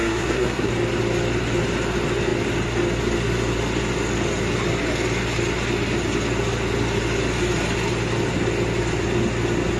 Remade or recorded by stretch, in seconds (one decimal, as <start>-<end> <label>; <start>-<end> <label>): 0.0-0.7 remade; 0.7-9.8 recorded